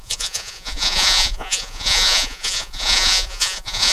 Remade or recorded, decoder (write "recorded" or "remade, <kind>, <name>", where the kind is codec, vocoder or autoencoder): remade, vocoder, Vocos